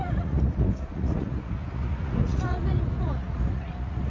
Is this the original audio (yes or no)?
no